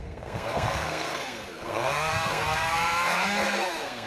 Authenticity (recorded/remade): remade